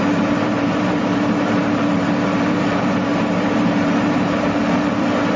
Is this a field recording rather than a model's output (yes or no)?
no